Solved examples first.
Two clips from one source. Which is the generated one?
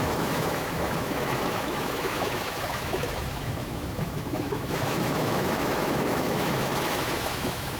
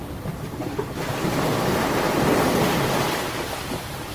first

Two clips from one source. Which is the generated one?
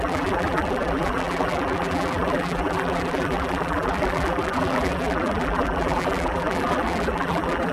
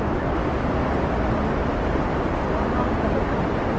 first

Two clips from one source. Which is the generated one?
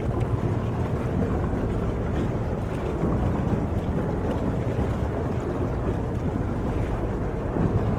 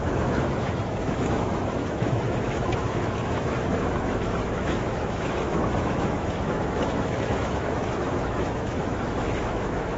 second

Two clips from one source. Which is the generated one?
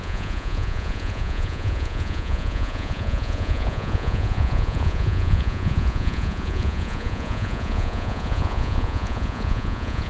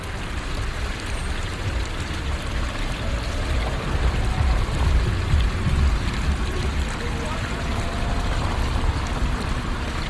first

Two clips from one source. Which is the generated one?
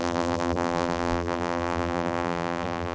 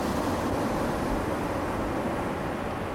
first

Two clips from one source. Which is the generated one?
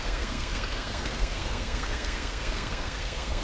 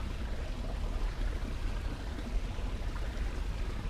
first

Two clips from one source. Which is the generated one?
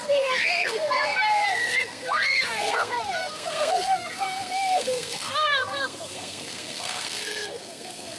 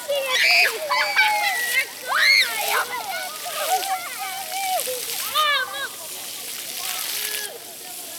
first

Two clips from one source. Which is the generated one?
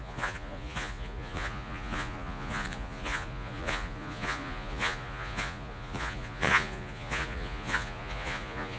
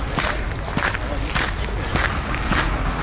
first